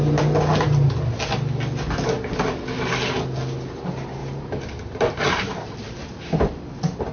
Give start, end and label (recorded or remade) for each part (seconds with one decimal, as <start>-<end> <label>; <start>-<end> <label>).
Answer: 0.0-4.2 recorded; 4.2-5.4 remade; 5.4-7.1 recorded